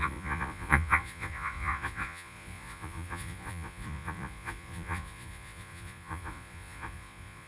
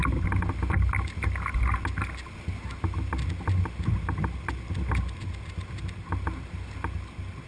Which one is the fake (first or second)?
first